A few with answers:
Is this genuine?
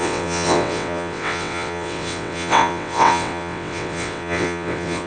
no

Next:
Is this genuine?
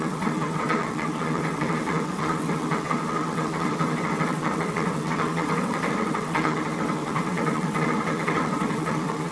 no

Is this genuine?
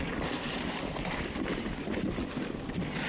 yes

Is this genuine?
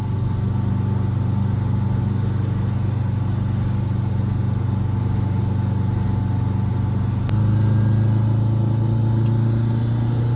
yes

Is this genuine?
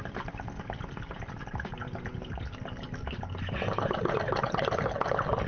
yes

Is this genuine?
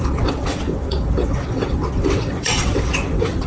no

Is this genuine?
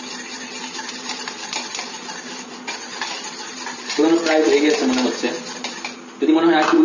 yes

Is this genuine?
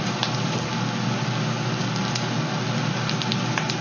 yes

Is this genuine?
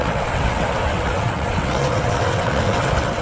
no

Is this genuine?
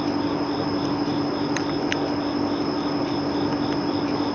yes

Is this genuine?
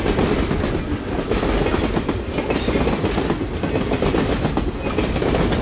yes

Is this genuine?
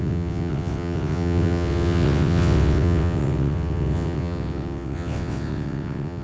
no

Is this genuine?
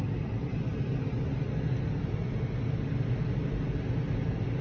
yes